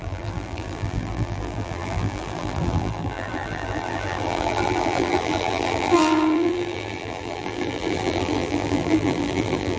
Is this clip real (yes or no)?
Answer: no